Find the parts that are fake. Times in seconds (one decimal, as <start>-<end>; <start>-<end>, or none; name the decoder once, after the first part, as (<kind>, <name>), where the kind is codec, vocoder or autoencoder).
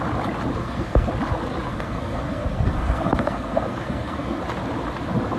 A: 0.6-1.1 (codec, SNAC); 1.7-4.4